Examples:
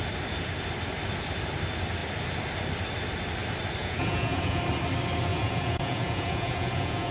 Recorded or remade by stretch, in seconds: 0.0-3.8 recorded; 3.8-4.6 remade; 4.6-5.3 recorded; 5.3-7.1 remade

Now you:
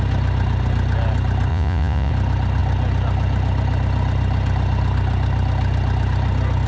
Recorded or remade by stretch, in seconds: 0.0-1.5 recorded; 1.5-2.1 remade; 2.1-6.7 recorded

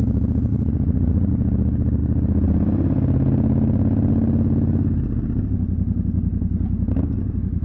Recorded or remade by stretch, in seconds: 0.0-0.5 recorded; 0.5-1.3 remade; 1.3-7.6 recorded

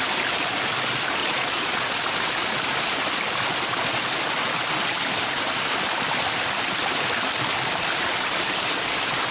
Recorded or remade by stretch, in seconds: 0.0-1.2 recorded; 1.2-2.1 remade; 2.1-9.3 recorded

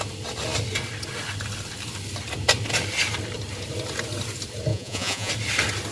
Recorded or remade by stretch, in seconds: 0.0-4.7 recorded; 4.7-5.3 remade; 5.3-5.9 recorded

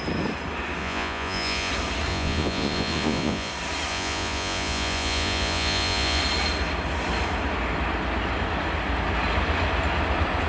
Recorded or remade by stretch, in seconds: 0.0-0.8 recorded; 0.8-1.7 remade; 1.7-2.1 recorded; 2.1-3.5 remade; 3.5-3.9 recorded; 3.9-6.2 remade; 6.2-10.5 recorded